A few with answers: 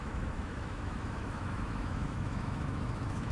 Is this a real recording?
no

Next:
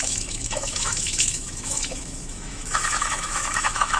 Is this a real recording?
no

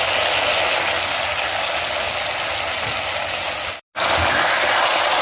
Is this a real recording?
yes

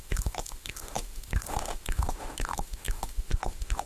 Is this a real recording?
no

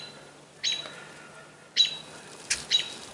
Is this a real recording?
yes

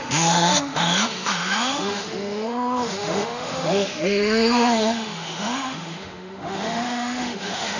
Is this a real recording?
no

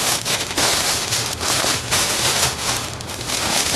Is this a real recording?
no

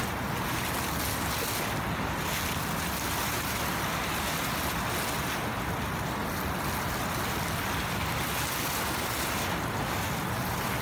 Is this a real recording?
yes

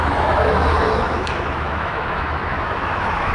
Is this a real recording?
no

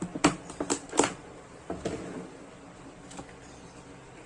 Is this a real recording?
yes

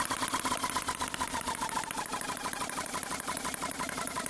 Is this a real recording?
yes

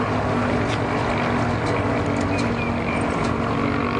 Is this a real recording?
yes